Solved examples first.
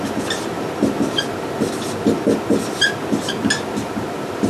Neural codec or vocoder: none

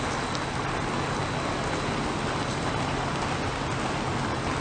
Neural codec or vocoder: none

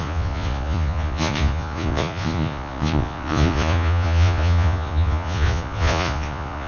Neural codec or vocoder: vocoder, Vocos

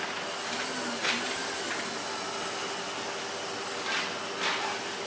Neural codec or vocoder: none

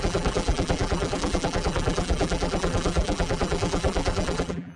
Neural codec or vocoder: vocoder, BigVGAN v2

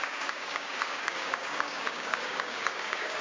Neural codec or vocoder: codec, DAC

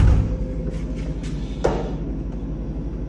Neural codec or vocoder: none